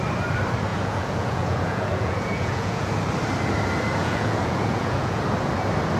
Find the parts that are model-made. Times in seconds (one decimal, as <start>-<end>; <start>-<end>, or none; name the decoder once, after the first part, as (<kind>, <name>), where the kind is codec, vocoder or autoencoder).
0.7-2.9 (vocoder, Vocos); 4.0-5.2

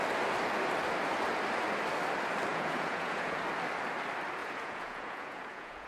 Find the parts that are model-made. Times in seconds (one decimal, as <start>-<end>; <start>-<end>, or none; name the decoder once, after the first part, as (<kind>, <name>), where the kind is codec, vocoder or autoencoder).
2.5-3.4 (vocoder, Vocos); 4.4-5.9

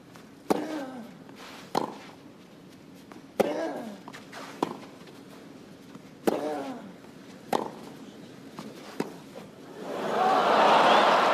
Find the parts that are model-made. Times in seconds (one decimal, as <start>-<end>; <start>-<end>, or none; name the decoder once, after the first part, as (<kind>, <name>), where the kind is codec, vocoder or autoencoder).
none